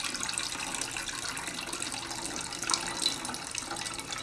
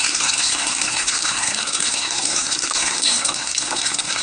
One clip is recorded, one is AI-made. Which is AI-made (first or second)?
second